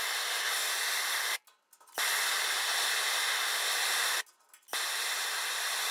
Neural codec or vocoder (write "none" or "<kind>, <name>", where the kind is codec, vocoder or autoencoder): none